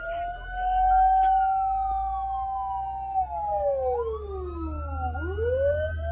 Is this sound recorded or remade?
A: recorded